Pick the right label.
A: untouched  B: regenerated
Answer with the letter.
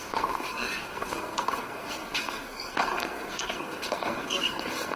B